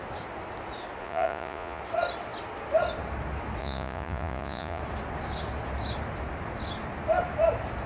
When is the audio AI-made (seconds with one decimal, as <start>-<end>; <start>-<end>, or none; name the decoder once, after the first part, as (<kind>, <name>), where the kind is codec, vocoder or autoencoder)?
1.0-1.8 (vocoder, Vocos); 3.6-4.8